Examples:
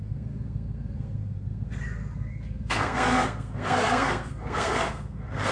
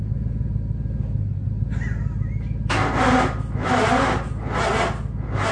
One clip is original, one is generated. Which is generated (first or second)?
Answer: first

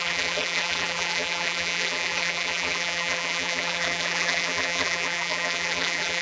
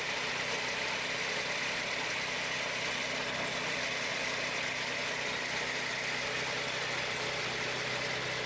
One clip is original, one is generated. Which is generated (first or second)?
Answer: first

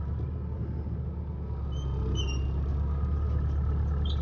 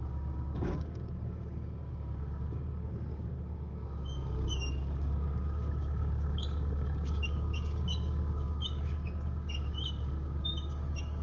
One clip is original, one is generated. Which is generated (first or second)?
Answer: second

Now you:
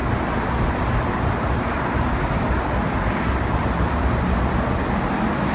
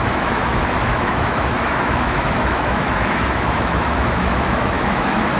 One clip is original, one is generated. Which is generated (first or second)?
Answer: second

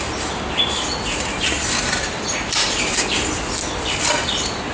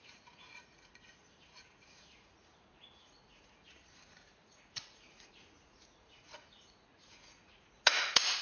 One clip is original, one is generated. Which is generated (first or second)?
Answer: second